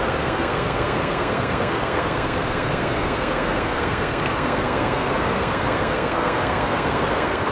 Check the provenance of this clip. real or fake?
fake